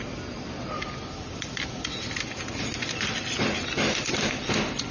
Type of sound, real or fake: real